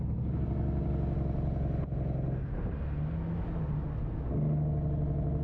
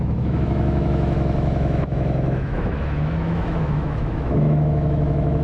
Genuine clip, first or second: first